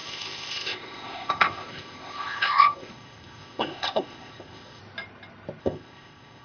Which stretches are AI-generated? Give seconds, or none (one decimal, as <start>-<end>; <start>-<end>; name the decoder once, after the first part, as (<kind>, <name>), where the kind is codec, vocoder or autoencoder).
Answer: 0.0-4.8 (codec, ZipCodec); 5.6-6.4